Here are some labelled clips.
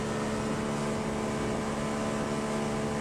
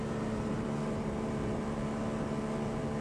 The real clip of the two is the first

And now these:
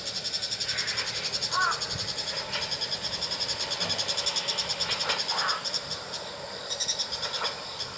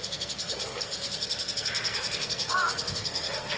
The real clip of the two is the first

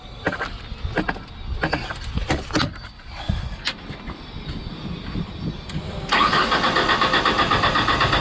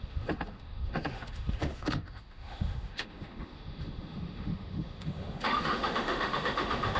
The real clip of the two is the first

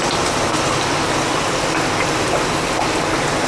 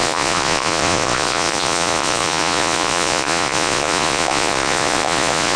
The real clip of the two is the first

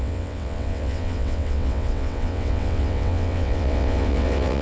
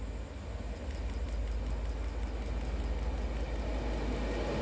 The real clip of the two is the second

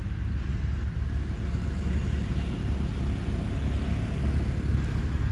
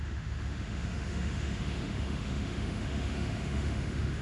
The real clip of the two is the first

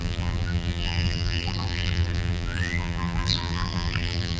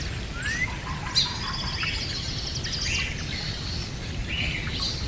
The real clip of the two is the second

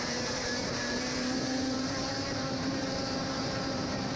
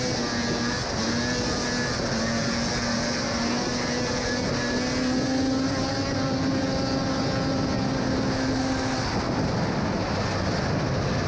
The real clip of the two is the second